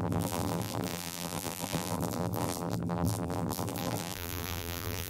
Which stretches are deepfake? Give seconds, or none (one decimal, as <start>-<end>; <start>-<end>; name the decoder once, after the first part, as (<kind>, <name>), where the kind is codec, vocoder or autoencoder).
0.0-5.1 (vocoder, BigVGAN v2)